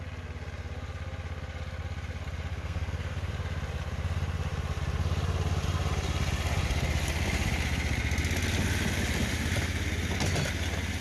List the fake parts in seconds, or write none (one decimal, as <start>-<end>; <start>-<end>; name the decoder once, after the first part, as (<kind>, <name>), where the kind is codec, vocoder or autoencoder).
2.5-3.3 (codec, SNAC)